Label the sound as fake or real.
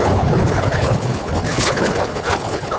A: fake